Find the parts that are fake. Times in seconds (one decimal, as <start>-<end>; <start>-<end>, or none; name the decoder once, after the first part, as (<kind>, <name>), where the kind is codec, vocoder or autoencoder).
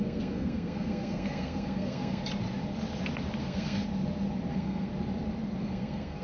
0.0-2.2 (codec, SNAC); 3.4-3.8; 4.5-4.9; 5.6-6.2